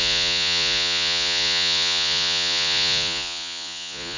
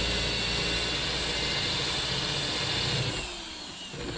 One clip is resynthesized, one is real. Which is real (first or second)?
second